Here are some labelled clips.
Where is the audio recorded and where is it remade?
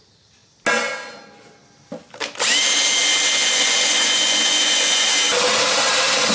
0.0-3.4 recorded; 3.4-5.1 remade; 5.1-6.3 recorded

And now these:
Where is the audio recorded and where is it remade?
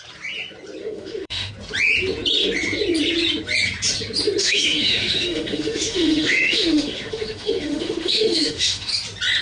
0.0-0.8 recorded; 0.8-1.5 remade; 1.5-4.4 recorded; 4.4-8.9 remade; 8.9-9.4 recorded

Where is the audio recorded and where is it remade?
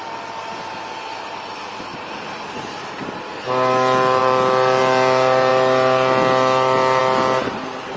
0.0-1.9 recorded; 1.9-2.8 remade; 2.8-4.2 recorded; 4.2-4.8 remade; 4.8-8.0 recorded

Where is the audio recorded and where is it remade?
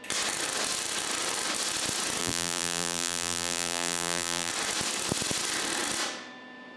0.0-2.2 recorded; 2.2-4.5 remade; 4.5-6.8 recorded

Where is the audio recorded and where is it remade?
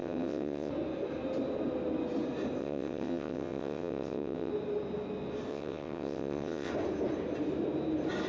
0.0-0.7 remade; 0.7-2.6 recorded; 2.6-4.5 remade; 4.5-5.5 recorded; 5.5-6.7 remade; 6.7-8.3 recorded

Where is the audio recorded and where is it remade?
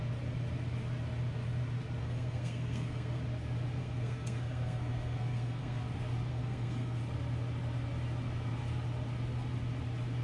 0.0-2.0 recorded; 2.0-3.2 remade; 3.2-3.8 recorded; 3.8-5.8 remade; 5.8-6.3 recorded; 6.3-7.0 remade; 7.0-10.2 recorded